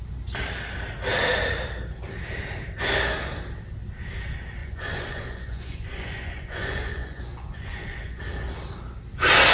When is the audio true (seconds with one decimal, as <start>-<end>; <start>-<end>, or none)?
0.0-4.6; 8.2-9.5